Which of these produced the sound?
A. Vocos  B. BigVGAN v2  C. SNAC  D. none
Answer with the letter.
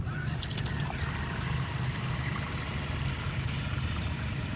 D